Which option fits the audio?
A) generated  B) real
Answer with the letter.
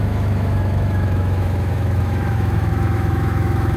A